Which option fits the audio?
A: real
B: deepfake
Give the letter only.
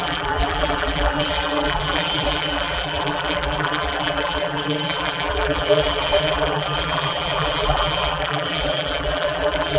B